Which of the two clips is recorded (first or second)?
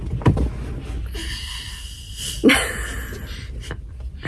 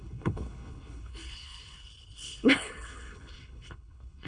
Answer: first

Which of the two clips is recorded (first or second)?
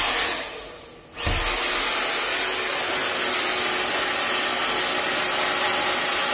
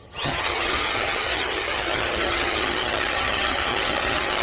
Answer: first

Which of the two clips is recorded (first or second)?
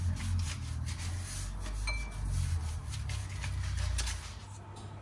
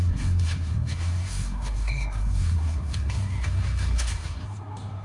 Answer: first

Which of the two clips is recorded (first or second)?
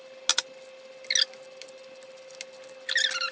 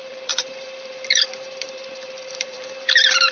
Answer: first